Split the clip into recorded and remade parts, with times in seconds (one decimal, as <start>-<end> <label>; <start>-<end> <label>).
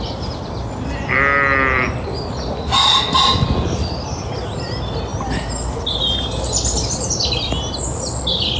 0.0-8.6 recorded